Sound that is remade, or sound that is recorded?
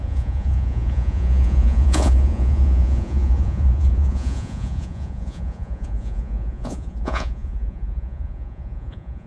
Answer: remade